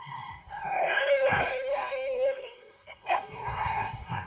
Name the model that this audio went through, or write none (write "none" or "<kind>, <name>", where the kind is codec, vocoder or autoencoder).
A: codec, SNAC